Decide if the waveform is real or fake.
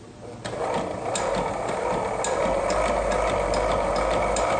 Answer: real